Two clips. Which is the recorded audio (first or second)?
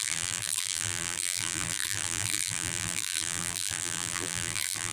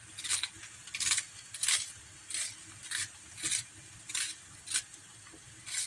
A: second